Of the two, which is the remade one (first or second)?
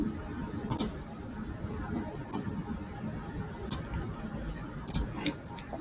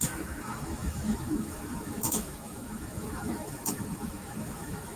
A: second